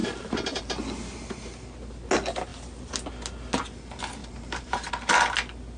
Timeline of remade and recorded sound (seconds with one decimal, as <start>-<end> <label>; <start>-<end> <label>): 0.0-0.6 remade; 0.6-4.2 recorded; 4.2-4.9 remade; 4.9-5.8 recorded